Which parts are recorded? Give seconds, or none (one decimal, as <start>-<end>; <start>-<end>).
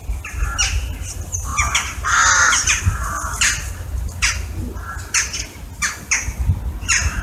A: 0.0-7.2